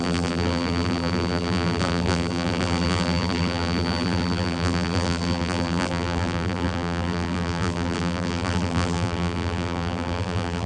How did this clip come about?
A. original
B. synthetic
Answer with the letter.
B